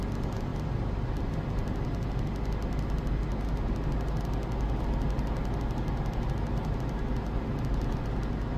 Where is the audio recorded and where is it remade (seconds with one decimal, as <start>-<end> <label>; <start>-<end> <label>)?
0.0-8.6 recorded